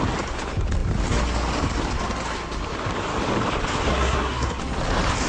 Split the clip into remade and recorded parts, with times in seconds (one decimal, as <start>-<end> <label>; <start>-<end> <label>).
0.0-3.9 recorded; 3.9-4.6 remade; 4.6-5.3 recorded

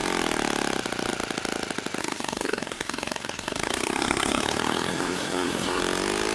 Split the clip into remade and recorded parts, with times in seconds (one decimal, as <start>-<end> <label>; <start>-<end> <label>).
0.0-2.0 recorded; 2.0-5.8 remade; 5.8-6.3 recorded

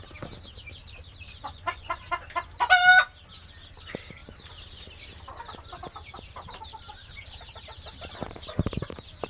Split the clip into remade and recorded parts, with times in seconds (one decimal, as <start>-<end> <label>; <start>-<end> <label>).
0.0-1.3 recorded; 1.3-2.1 remade; 2.1-9.3 recorded

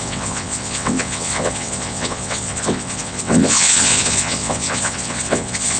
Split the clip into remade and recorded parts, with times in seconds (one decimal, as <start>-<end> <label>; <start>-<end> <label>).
0.0-5.8 remade

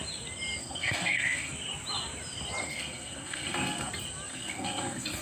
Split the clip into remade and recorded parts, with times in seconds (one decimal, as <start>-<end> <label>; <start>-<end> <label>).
0.0-0.6 recorded; 0.6-1.5 remade; 1.5-2.6 recorded; 2.6-3.9 remade; 3.9-4.3 recorded; 4.3-5.2 remade

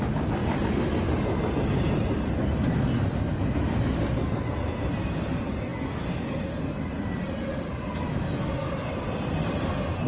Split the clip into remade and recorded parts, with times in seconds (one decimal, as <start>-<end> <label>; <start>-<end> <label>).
0.0-10.1 recorded

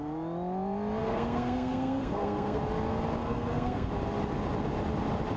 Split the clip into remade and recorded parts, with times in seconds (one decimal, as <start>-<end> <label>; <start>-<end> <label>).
0.0-1.0 recorded; 1.0-2.6 remade; 2.6-3.2 recorded; 3.2-3.9 remade; 3.9-5.4 recorded